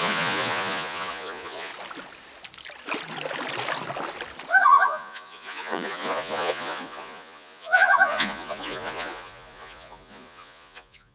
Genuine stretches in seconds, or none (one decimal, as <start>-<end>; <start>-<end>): 1.7-4.5